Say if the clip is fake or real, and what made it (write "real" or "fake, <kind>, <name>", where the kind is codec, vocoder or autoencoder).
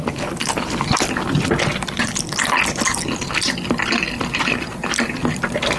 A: fake, vocoder, BigVGAN v2